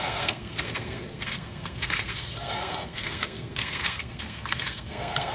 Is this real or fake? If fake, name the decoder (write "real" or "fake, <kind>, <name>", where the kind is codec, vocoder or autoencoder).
fake, codec, SNAC